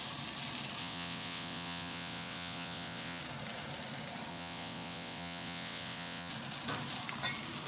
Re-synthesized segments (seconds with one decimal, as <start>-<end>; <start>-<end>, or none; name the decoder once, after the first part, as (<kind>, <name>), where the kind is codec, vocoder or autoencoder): 0.8-3.2 (vocoder, WaveNeXt); 4.3-6.3